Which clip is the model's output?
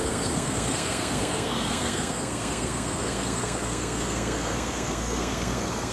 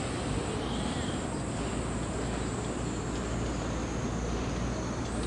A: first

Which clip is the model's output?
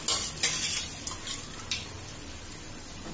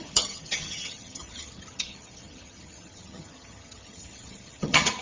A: second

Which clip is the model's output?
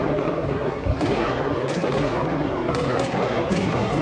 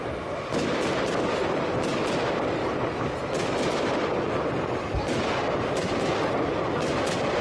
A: first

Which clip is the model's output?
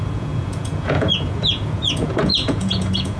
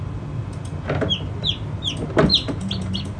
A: first